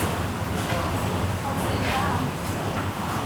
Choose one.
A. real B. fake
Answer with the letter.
B